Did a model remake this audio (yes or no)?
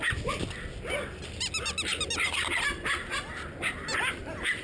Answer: no